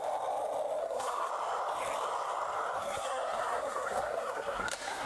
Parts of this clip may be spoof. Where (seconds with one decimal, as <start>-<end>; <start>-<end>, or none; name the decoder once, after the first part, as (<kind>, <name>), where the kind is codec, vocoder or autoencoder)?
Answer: 0.8-1.3 (codec, SNAC); 2.8-5.1